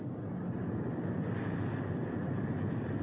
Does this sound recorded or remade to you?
recorded